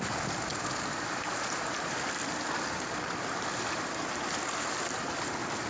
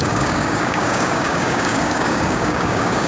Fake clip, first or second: second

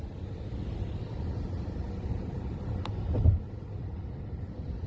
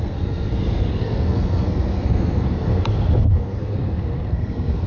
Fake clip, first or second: second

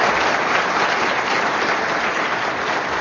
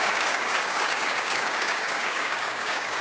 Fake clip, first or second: second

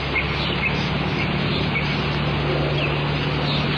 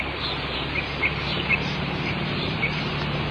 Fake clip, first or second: second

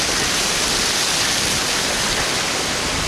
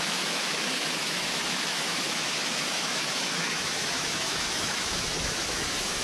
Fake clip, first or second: second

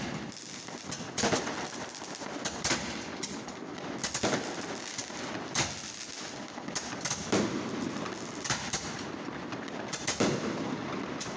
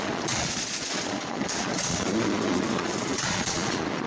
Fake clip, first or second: second